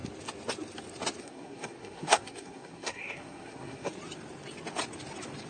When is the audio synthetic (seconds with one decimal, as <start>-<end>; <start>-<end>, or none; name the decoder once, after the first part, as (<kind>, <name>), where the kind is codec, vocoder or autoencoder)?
1.2-3.9 (codec, SNAC)